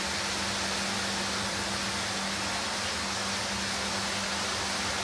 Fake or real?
real